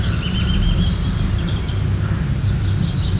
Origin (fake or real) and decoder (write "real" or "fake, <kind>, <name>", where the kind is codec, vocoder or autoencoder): real